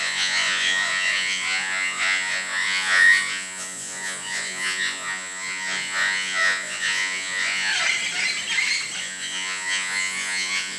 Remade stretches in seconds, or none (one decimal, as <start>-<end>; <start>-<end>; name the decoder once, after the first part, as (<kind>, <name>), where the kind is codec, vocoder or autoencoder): 0.0-7.7 (vocoder, Vocos); 9.0-10.8